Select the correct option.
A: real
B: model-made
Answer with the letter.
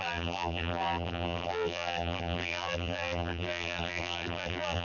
B